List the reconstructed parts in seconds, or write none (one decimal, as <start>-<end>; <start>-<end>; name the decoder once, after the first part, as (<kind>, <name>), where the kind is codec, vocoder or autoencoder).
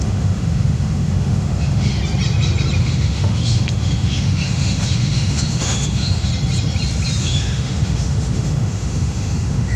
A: 0.0-2.0 (autoencoder, DAC-VAE); 2.8-6.3; 7.2-9.8